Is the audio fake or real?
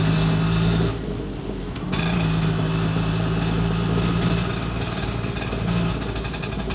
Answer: real